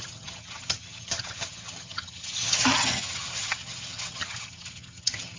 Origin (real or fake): fake